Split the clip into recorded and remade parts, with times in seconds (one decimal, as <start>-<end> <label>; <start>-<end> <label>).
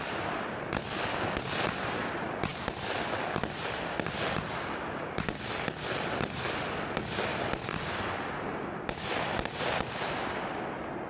0.0-11.1 recorded